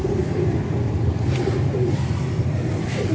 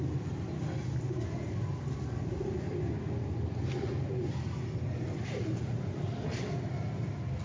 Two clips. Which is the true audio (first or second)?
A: second